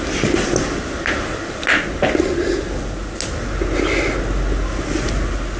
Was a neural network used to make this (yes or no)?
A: no